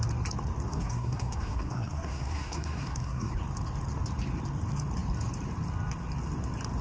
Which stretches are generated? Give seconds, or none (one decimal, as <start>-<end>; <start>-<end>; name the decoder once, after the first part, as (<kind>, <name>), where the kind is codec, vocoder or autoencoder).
0.7-3.3 (codec, SNAC)